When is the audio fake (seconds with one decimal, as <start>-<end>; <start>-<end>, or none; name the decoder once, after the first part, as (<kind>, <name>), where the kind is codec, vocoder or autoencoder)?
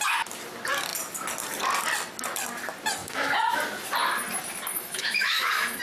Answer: 3.0-3.5 (autoencoder, DAC-VAE); 4.7-5.8